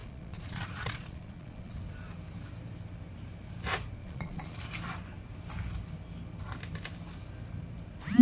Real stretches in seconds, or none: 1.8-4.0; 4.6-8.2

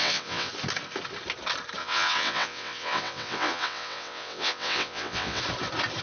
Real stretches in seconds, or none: 0.5-1.8; 5.4-6.0

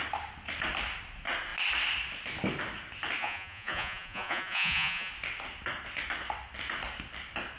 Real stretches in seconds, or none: 0.0-3.2; 5.1-7.6

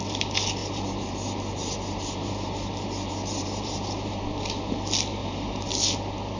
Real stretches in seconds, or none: 0.0-0.6; 4.2-5.2; 5.7-6.4

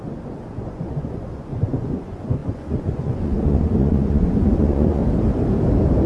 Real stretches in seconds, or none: 5.0-6.1